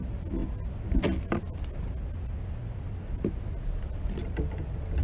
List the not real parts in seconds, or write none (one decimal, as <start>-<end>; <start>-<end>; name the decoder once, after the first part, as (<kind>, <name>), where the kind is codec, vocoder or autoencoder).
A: none